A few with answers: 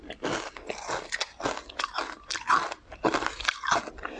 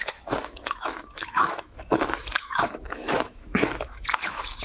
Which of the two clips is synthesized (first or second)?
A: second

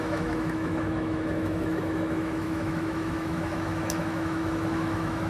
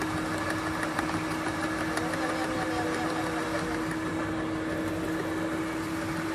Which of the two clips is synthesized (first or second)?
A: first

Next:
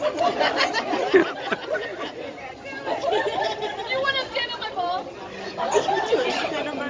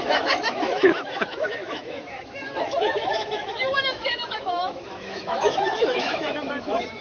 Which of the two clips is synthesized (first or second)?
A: second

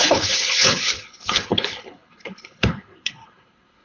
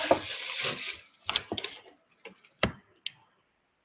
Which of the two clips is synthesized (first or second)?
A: first